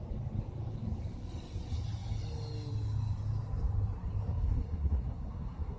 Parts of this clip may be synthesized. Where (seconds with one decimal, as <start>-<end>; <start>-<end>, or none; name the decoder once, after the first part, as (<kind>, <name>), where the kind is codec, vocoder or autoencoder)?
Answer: 4.3-5.8 (codec, SNAC)